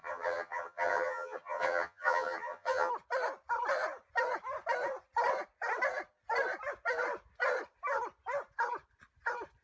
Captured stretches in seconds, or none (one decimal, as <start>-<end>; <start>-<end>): 2.9-9.6